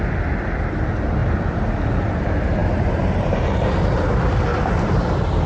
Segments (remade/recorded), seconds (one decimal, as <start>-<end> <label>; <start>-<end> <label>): 0.0-1.2 recorded; 1.2-1.7 remade; 1.7-2.6 recorded; 2.6-3.6 remade; 3.6-4.5 recorded; 4.5-5.1 remade; 5.1-5.5 recorded